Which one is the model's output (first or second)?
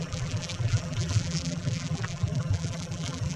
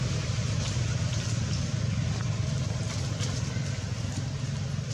first